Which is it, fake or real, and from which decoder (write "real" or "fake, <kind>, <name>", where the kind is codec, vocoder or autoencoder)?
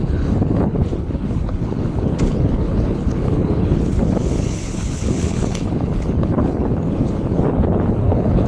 fake, codec, HILCodec